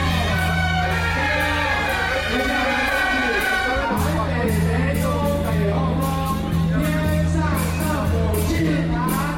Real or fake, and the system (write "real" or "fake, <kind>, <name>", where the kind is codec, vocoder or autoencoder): real